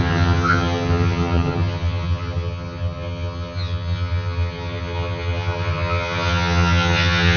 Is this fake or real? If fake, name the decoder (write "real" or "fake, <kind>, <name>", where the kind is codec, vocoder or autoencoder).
fake, vocoder, HiFi-GAN